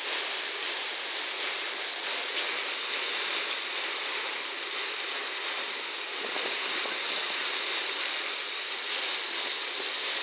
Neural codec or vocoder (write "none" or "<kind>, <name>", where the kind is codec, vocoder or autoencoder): none